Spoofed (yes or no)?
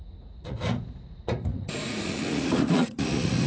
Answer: yes